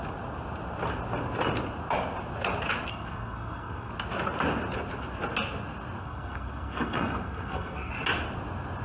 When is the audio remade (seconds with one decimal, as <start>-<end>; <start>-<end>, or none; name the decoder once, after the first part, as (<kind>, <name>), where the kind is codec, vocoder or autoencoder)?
2.9-3.9 (codec, SNAC); 6.0-7.9